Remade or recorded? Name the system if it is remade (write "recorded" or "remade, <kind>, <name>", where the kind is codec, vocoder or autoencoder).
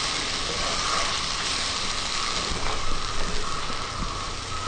recorded